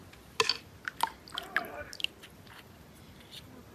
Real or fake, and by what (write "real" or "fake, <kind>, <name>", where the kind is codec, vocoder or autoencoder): real